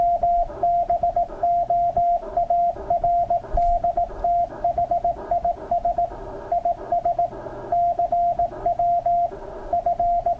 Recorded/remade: recorded